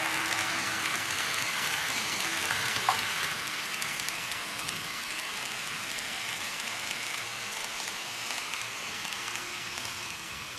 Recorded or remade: remade